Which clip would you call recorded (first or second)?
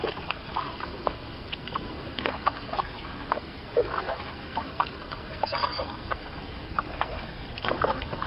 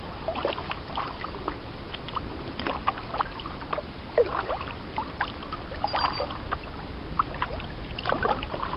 second